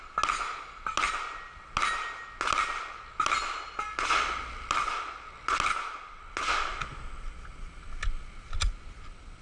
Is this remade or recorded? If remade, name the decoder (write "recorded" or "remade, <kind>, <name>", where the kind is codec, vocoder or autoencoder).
recorded